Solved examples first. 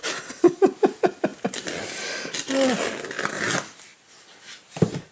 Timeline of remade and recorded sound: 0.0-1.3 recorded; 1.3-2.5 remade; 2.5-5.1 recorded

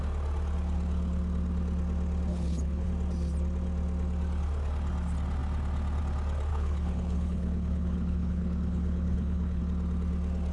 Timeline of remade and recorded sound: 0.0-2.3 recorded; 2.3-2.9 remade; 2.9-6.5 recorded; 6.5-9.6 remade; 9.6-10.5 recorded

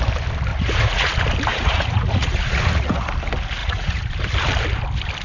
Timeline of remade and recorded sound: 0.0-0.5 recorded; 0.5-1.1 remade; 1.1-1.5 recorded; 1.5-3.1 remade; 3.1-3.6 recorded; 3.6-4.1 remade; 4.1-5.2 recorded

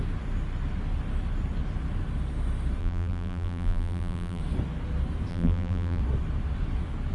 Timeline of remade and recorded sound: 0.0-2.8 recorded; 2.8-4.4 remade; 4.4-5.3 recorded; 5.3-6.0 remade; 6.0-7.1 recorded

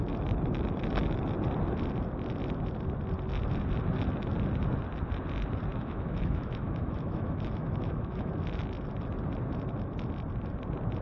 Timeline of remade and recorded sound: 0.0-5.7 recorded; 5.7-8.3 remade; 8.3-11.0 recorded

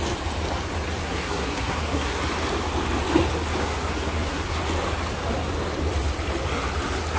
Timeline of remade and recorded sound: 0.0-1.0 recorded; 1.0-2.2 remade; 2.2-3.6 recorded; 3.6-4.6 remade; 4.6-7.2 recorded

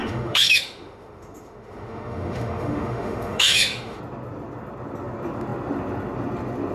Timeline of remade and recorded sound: 0.0-4.0 remade; 4.0-6.7 recorded

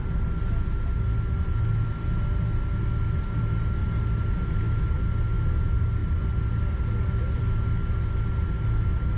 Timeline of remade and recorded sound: 0.0-9.2 recorded